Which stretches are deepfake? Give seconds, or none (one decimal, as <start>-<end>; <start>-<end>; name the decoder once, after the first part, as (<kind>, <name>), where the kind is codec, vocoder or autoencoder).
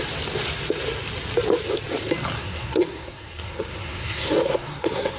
2.4-5.2 (codec, SNAC)